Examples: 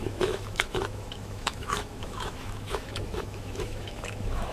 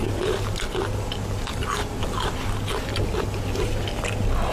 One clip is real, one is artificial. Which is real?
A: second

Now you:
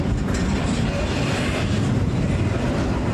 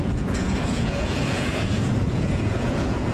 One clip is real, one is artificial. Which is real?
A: first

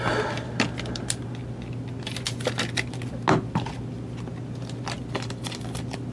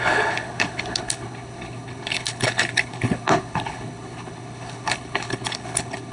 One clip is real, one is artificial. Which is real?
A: first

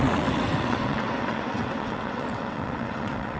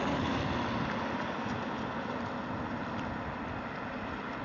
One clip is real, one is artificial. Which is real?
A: second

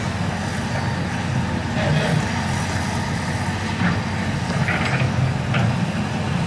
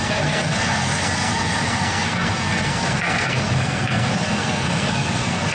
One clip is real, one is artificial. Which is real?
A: first